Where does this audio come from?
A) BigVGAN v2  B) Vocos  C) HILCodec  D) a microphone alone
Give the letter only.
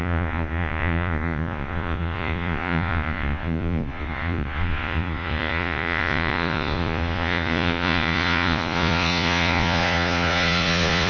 B